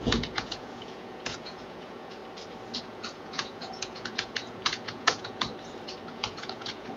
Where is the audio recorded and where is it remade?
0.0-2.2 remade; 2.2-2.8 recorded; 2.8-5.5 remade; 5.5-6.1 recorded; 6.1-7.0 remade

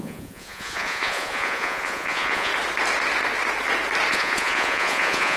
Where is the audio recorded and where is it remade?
0.0-2.5 remade; 2.5-4.1 recorded; 4.1-5.4 remade

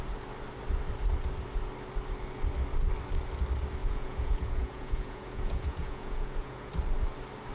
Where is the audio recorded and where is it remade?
0.0-3.8 recorded; 3.8-6.7 remade; 6.7-7.5 recorded

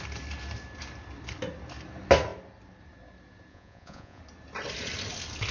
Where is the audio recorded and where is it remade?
0.0-3.5 recorded; 3.5-4.2 remade; 4.2-5.5 recorded

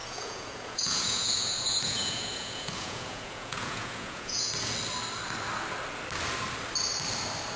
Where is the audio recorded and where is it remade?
0.0-4.5 remade; 4.5-7.6 recorded